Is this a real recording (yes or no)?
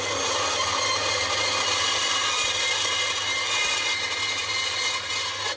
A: yes